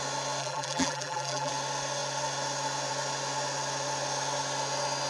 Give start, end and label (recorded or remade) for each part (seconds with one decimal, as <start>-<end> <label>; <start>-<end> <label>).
0.0-0.4 recorded; 0.4-1.5 remade; 1.5-5.1 recorded